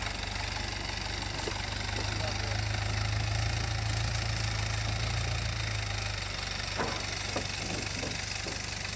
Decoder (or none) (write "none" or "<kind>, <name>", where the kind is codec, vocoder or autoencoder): none